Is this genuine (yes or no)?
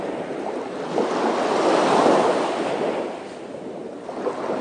yes